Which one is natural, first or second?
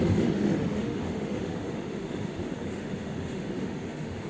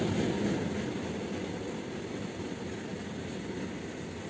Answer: second